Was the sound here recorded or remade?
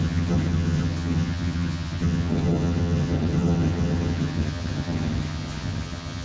remade